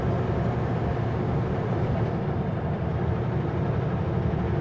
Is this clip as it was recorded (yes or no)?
yes